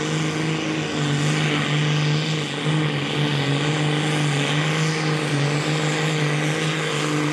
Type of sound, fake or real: real